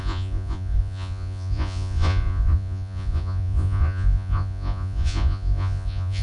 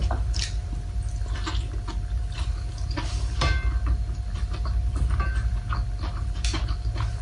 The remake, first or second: first